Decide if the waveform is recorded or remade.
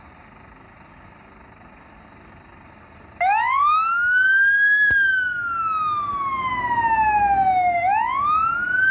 recorded